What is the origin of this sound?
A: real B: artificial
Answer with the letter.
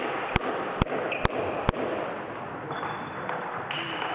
A